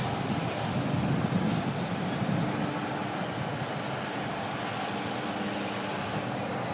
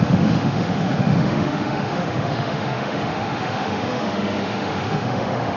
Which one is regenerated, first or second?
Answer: second